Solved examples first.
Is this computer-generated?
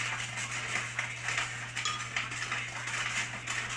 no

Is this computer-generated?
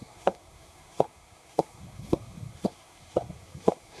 yes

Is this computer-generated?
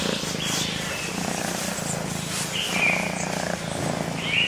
no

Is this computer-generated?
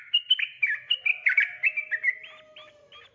no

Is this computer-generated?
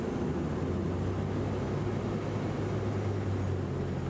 no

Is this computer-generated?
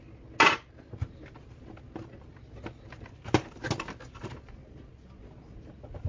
no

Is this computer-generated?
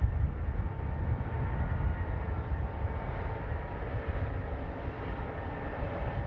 no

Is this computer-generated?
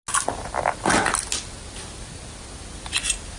no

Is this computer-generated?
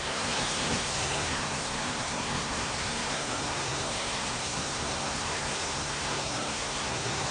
yes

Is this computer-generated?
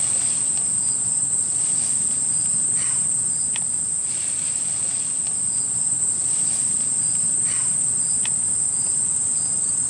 no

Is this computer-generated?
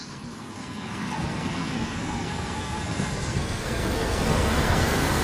yes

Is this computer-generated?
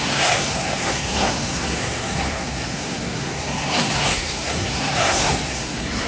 yes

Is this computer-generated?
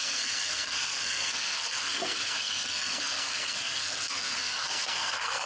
yes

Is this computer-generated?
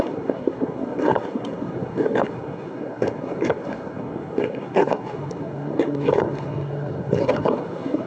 yes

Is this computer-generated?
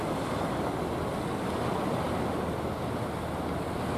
no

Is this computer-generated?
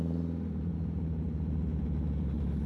no